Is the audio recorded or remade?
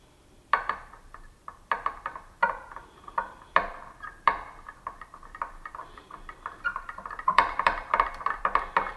remade